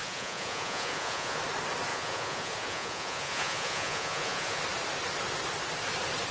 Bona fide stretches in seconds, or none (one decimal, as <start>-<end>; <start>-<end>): 1.4-1.9; 4.6-6.3